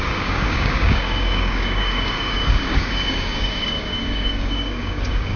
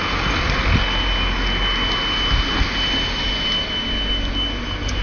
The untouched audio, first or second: second